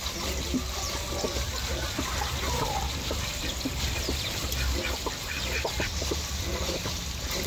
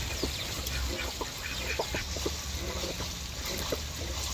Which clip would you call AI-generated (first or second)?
first